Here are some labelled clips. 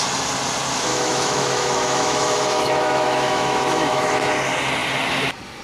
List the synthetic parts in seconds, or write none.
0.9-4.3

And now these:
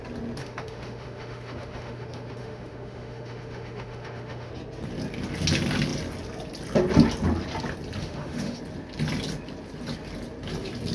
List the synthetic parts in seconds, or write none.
0.4-4.5; 8.0-8.6

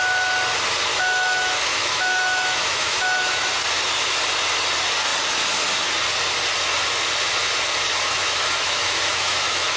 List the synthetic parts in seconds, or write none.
0.9-3.5; 8.2-9.8